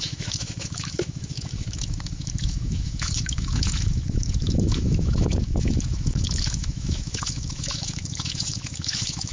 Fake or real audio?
fake